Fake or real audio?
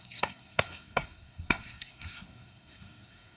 fake